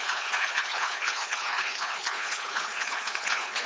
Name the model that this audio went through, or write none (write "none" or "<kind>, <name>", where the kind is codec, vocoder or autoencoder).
codec, HILCodec